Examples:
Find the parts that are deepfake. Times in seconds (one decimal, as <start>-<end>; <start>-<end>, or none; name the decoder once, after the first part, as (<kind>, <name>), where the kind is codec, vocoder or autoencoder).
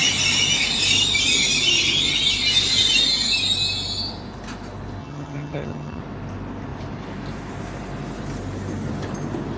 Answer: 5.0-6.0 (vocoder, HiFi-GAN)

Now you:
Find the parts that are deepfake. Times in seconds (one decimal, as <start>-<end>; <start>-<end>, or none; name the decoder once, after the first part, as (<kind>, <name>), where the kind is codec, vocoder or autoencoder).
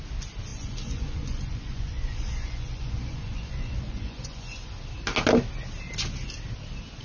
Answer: 0.5-4.7 (vocoder, Vocos)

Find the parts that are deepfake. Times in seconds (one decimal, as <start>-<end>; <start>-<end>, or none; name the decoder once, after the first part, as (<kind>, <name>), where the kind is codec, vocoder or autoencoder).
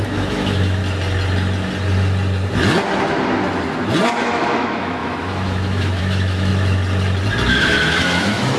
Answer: 0.0-0.8 (autoencoder, DAC-VAE); 4.2-6.5; 7.5-8.6